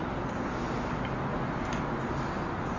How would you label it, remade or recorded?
recorded